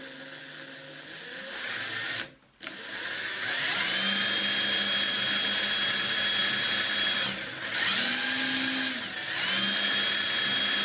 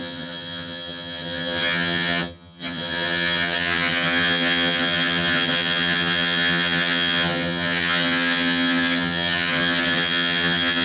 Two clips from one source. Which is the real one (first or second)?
first